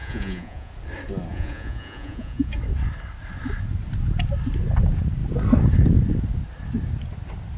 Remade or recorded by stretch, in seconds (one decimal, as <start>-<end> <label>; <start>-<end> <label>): 0.0-0.7 remade; 0.7-1.3 recorded; 1.3-2.6 remade; 2.6-7.6 recorded